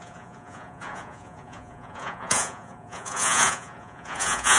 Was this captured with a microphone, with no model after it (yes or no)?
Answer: no